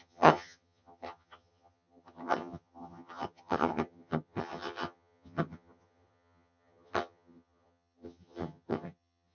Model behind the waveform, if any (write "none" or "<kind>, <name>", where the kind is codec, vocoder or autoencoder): vocoder, HiFi-GAN